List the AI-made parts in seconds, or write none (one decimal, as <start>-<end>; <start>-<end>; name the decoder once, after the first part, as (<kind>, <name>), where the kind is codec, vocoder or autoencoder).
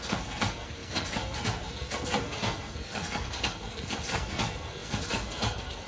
0.0-5.9 (codec, SNAC)